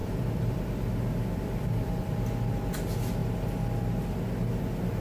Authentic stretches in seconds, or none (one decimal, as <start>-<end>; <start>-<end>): 2.0-5.0